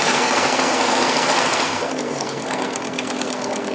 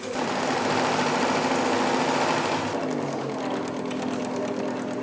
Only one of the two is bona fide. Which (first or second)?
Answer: second